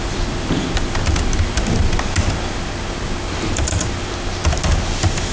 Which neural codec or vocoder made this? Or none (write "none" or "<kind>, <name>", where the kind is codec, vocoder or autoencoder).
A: none